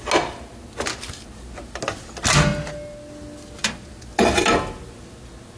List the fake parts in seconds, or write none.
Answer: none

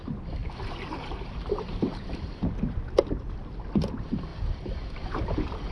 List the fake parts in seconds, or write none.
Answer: 0.4-2.4 (vocoder, BigVGAN v2); 4.3-5.2

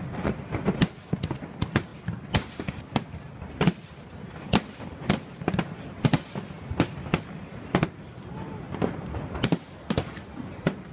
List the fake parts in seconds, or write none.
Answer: none